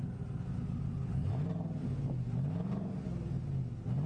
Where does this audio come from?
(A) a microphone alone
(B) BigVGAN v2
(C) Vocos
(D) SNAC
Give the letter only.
A